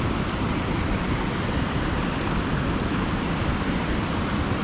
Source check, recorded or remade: remade